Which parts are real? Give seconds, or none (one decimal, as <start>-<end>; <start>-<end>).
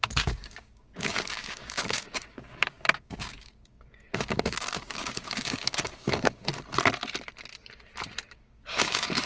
6.5-8.3